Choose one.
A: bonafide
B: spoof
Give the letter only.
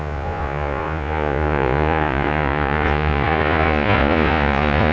B